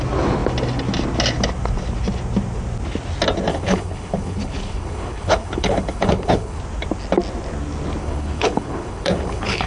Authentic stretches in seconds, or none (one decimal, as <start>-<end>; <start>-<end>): 0.0-3.5; 6.6-8.0